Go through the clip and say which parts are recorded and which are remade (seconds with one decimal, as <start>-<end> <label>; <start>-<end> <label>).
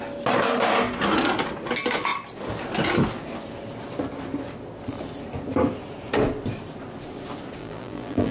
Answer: 0.0-7.6 recorded; 7.6-8.3 remade